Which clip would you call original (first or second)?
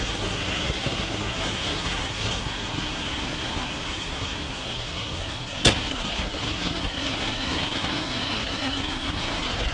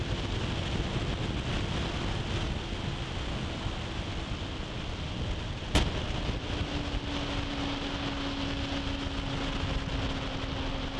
second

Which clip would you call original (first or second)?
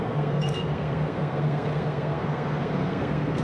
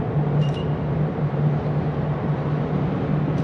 second